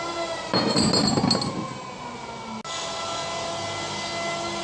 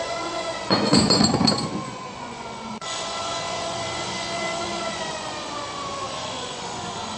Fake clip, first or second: second